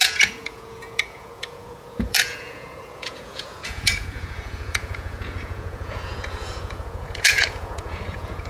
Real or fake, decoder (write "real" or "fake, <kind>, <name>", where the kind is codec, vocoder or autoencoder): fake, vocoder, Vocos